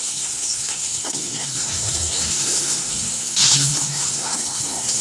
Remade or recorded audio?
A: remade